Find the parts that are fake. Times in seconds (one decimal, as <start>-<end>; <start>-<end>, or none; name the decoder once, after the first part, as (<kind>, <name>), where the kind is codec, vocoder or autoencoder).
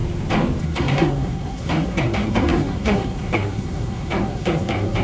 0.6-5.0 (codec, SNAC)